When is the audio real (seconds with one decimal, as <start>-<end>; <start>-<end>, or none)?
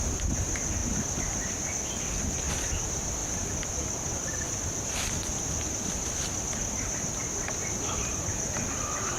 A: 0.0-3.2; 4.3-9.2